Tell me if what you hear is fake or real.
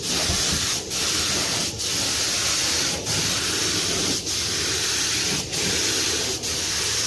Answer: real